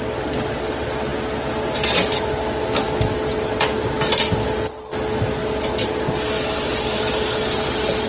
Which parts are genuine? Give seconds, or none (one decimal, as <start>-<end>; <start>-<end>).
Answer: 0.0-8.1